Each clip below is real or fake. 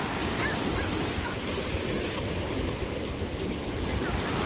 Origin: real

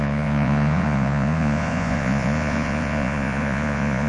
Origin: fake